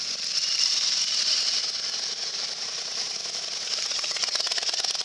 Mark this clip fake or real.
real